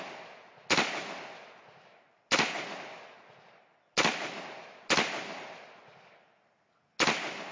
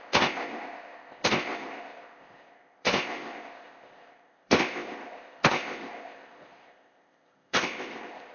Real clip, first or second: first